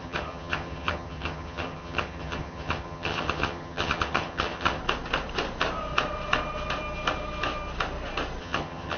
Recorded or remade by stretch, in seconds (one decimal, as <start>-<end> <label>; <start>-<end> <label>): 0.0-4.8 remade; 4.8-8.4 recorded; 8.4-9.0 remade